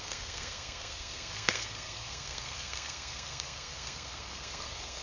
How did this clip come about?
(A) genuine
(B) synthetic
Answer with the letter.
B